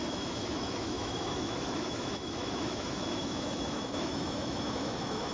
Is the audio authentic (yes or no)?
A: no